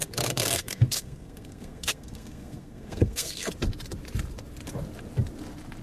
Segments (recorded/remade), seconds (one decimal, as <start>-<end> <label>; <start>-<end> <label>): 0.0-3.5 remade; 3.5-5.8 recorded